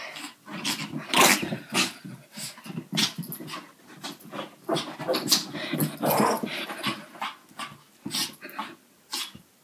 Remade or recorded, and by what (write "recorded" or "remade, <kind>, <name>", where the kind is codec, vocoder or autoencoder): recorded